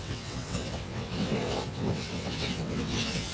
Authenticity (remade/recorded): remade